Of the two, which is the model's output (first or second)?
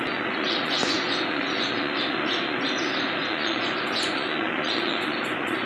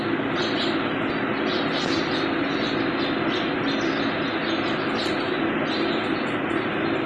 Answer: first